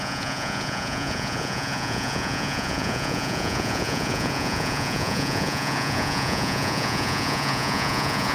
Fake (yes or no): yes